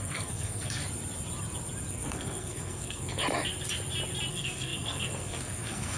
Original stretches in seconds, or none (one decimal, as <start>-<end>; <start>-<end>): 0.8-1.9; 3.2-4.3